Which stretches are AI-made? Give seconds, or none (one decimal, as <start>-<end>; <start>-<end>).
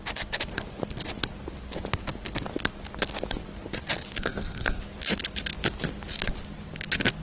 4.2-4.8